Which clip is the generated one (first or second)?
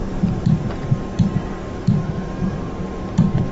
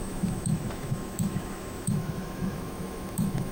second